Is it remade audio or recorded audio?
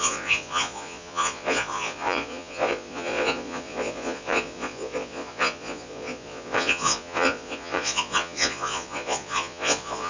remade